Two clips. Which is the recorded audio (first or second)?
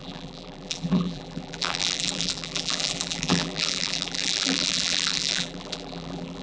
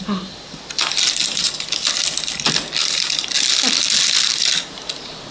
second